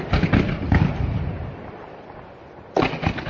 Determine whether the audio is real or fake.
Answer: real